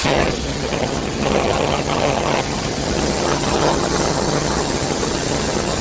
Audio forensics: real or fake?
fake